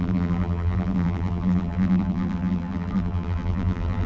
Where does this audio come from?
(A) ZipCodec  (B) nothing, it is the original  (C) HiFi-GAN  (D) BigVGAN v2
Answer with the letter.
D